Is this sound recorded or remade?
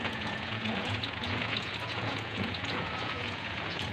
remade